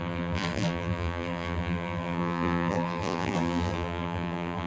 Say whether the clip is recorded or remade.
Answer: remade